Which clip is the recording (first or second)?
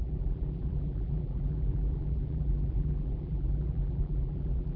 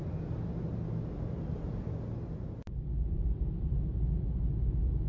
second